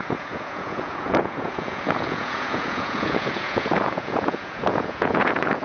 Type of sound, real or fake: fake